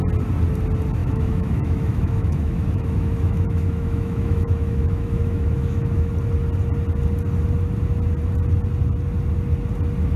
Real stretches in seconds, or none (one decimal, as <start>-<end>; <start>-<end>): 0.0-1.0; 6.1-10.2